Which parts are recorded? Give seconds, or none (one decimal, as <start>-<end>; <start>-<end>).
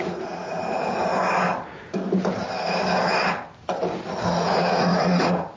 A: 1.1-4.3